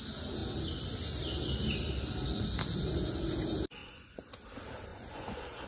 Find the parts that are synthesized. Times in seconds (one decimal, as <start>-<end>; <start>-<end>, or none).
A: 3.8-4.3; 4.9-5.7